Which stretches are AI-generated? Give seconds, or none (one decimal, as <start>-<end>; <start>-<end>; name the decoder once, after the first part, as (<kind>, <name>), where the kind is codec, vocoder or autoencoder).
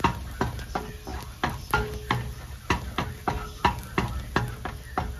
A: none